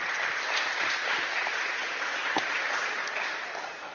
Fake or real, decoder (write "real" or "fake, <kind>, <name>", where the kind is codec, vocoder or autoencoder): real